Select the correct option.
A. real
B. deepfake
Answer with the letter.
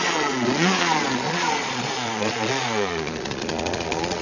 B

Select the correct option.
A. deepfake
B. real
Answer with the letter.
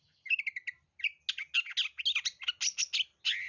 B